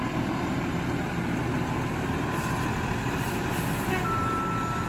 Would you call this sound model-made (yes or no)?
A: no